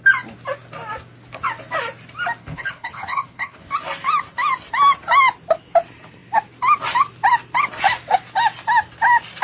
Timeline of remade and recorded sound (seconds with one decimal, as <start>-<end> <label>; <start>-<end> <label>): 0.0-2.4 recorded; 2.4-3.6 remade; 3.6-9.4 recorded

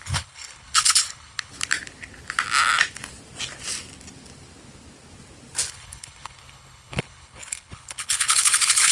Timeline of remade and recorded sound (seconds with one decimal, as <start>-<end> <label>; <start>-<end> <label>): 0.0-1.5 remade; 1.5-5.7 recorded; 5.7-8.9 remade

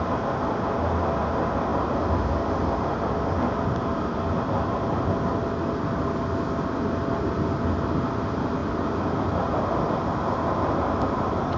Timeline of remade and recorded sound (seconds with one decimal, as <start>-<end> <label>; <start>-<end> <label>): 0.0-11.6 recorded

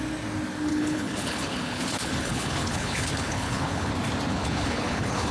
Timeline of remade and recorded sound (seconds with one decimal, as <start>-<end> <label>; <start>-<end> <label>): 0.0-0.7 recorded; 0.7-3.9 remade; 3.9-4.3 recorded; 4.3-5.3 remade